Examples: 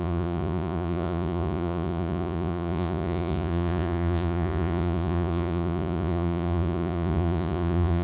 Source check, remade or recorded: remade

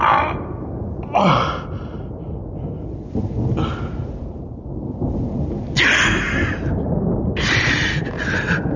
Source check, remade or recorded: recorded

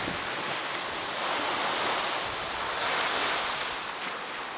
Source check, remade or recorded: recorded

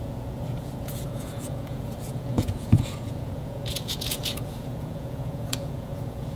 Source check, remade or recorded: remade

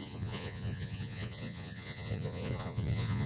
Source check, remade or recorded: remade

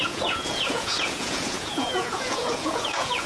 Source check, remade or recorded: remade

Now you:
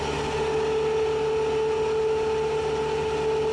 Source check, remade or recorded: recorded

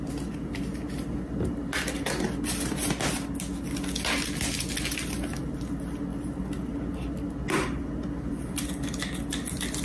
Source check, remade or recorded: recorded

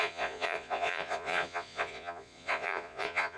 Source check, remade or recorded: remade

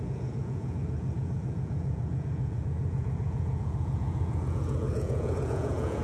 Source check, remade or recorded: remade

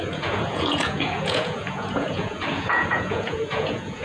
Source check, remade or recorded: remade